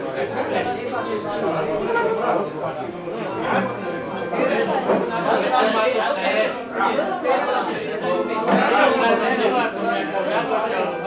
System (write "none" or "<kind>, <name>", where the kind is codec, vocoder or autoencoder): none